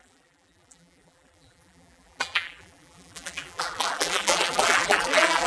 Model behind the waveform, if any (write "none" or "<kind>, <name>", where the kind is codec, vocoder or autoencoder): vocoder, BigVGAN v2